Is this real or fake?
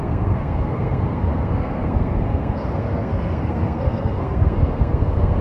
fake